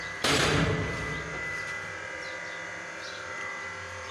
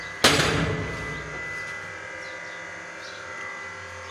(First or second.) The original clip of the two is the second